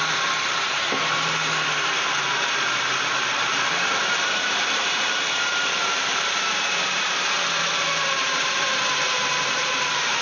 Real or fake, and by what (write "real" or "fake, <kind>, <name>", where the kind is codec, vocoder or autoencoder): fake, vocoder, BigVGAN v2